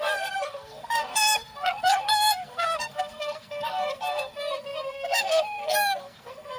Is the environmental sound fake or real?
fake